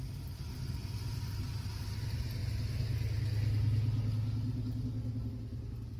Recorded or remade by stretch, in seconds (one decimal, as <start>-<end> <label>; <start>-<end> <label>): 0.0-6.0 recorded